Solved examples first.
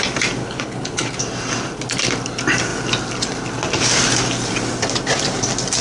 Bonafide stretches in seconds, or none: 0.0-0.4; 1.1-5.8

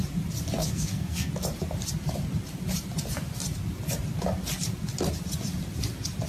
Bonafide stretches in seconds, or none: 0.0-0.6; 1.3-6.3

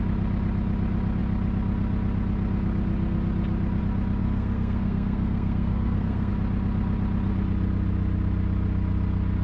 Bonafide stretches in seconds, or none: 0.0-4.2; 6.3-9.4